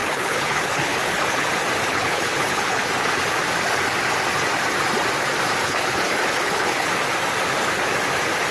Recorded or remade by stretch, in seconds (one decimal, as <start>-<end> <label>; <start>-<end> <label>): 0.0-1.5 remade; 1.5-1.9 recorded; 1.9-2.9 remade; 2.9-5.6 recorded; 5.6-6.9 remade; 6.9-8.5 recorded